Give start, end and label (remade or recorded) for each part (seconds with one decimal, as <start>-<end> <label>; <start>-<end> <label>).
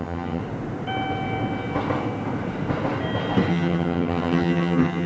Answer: 0.0-0.4 remade; 0.4-3.5 recorded; 3.5-5.1 remade